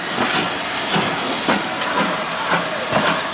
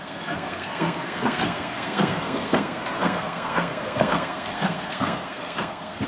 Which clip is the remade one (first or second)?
second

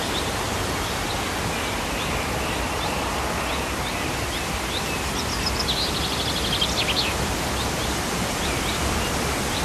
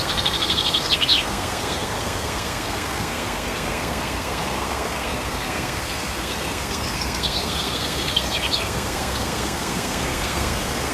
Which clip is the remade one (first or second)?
second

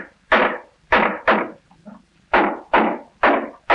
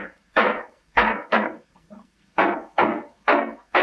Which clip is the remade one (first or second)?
second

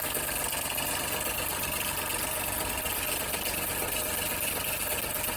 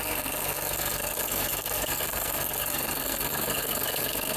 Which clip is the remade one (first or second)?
second